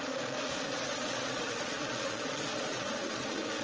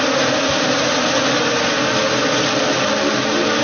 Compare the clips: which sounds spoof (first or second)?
first